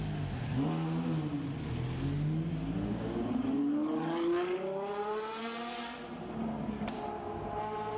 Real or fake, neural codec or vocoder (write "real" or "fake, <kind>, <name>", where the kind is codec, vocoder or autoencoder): real